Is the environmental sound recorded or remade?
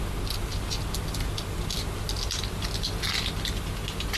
recorded